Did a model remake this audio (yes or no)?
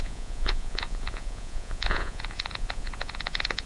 yes